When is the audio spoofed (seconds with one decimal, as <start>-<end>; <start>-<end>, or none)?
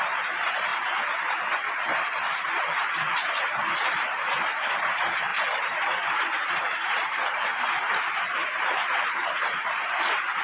0.0-0.7; 1.7-10.4